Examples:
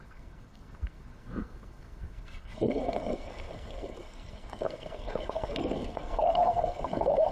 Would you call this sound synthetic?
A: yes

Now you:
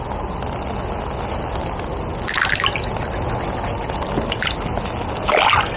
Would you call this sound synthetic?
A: no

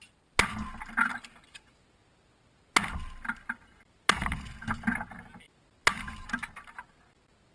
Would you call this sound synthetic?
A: no